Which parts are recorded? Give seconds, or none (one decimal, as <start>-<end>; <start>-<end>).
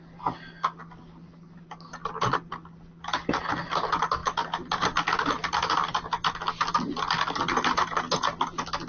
0.0-8.9